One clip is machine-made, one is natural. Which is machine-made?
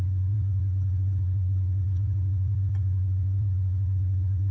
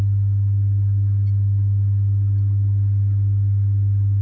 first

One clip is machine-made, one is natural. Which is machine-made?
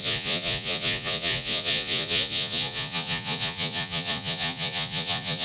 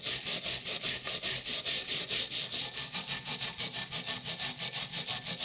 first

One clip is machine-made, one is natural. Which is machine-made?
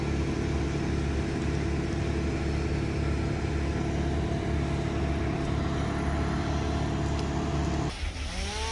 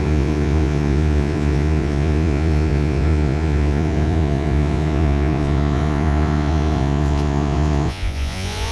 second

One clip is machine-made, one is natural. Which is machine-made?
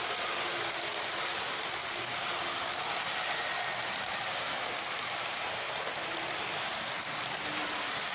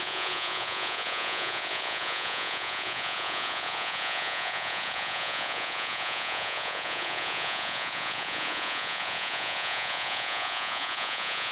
second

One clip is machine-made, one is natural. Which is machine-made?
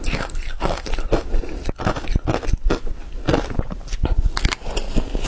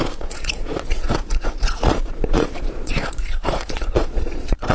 second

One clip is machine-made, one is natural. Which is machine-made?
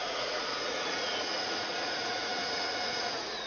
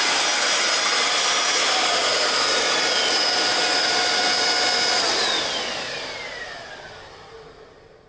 first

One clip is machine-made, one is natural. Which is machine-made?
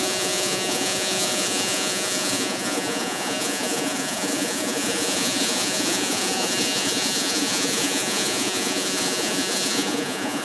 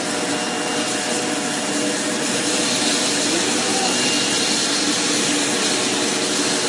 first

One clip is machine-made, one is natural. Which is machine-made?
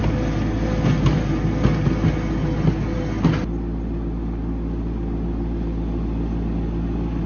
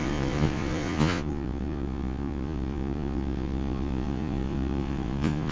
second